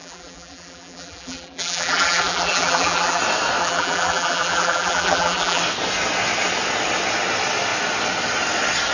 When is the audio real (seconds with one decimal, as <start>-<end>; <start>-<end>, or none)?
3.2-3.6; 5.6-8.9